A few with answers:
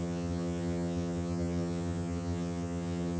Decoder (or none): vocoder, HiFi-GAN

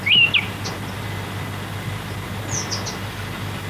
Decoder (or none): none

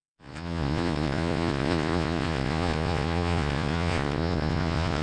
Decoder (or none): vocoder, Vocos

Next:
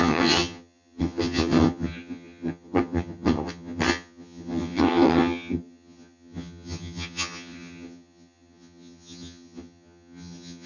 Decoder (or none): vocoder, HiFi-GAN